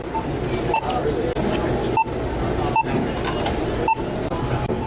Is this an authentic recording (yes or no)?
yes